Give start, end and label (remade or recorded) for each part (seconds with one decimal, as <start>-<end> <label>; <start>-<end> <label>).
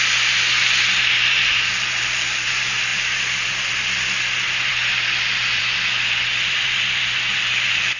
0.0-2.9 recorded; 2.9-3.7 remade; 3.7-6.3 recorded; 6.3-8.0 remade